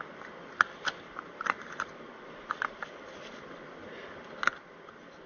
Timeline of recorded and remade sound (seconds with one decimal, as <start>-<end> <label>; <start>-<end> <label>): 0.0-5.3 recorded